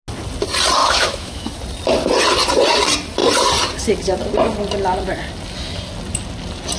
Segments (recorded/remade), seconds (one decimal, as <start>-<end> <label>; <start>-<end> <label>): 0.0-0.8 recorded; 0.8-1.6 remade; 1.6-6.8 recorded